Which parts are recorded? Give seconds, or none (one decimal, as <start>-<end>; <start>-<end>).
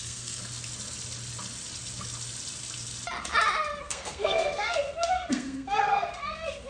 0.4-3.8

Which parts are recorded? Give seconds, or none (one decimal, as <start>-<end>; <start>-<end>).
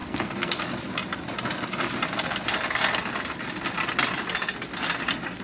0.6-5.4